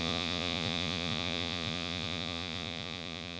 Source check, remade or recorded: remade